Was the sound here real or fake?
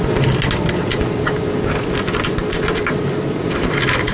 real